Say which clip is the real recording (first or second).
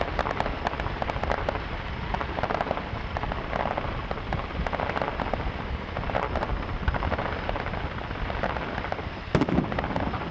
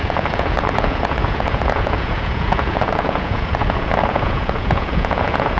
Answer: first